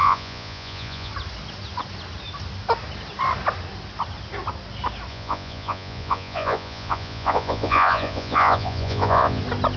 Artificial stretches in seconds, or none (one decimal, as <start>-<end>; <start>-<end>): 0.0-1.1; 5.1-9.4